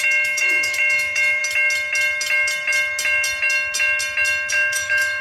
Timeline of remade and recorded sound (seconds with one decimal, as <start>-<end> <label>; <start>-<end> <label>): 0.0-1.4 remade; 1.4-4.5 recorded; 4.5-5.2 remade